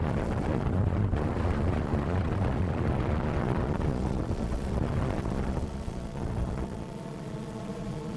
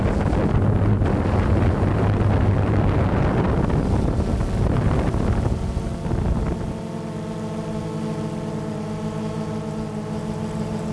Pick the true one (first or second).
second